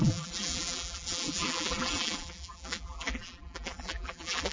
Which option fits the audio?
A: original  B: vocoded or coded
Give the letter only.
B